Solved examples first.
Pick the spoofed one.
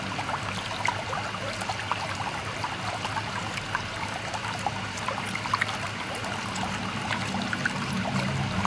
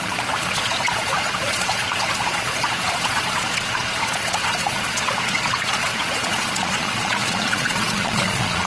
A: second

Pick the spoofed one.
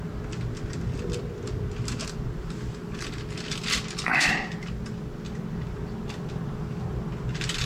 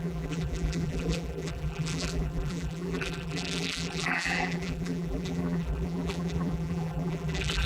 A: second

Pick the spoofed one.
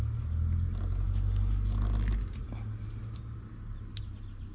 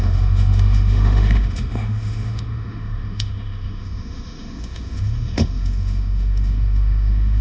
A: second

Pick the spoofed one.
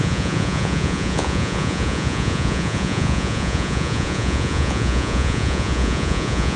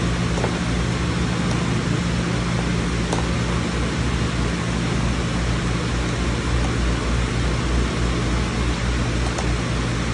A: first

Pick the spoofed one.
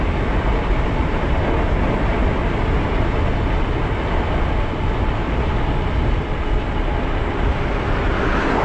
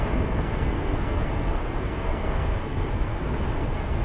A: second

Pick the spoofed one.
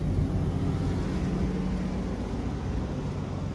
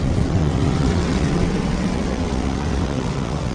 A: second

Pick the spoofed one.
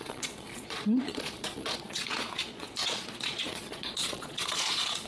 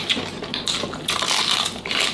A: first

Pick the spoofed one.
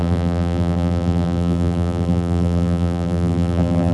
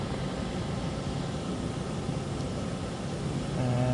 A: first